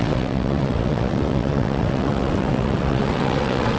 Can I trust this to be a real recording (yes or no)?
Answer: no